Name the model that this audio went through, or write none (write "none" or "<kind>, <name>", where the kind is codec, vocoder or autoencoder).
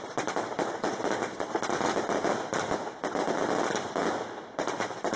none